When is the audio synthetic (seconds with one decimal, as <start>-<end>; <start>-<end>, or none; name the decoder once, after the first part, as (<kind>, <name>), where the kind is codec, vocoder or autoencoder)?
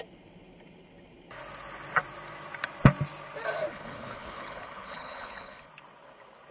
3.7-5.7 (codec, HILCodec)